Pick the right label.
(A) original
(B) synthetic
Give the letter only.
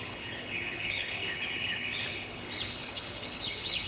B